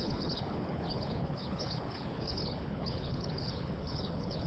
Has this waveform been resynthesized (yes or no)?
yes